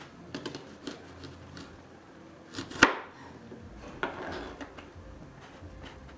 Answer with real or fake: real